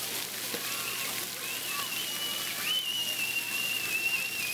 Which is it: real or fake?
real